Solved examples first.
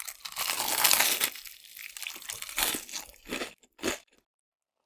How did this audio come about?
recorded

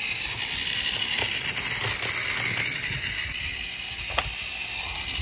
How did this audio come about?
recorded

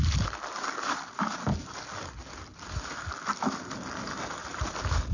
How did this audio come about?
recorded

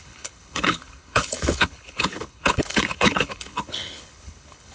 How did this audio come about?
remade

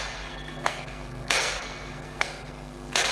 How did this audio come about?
remade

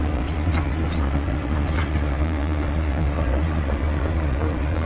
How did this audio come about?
remade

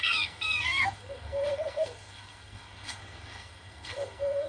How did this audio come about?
remade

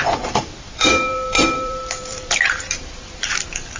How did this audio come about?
remade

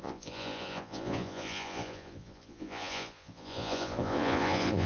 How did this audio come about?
remade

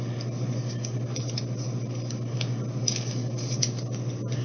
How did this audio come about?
recorded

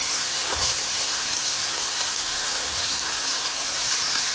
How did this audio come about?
remade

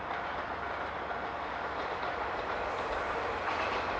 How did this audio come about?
remade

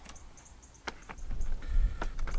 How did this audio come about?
recorded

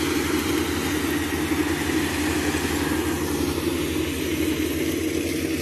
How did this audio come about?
recorded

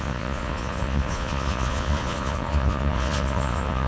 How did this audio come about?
remade